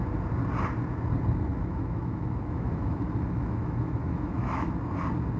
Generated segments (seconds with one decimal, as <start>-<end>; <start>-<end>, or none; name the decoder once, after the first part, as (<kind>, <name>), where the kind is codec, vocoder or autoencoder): 1.5-4.7 (autoencoder, DAC-VAE)